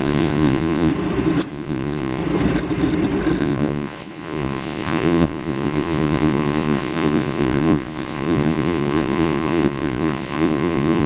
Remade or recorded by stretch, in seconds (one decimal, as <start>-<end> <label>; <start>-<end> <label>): 0.0-0.9 remade; 0.9-1.5 recorded; 1.5-2.2 remade; 2.2-3.4 recorded; 3.4-11.1 remade